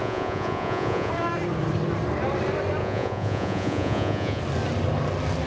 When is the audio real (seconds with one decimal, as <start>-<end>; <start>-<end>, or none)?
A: 1.1-2.8; 4.4-5.5